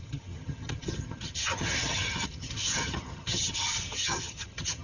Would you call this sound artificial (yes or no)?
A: yes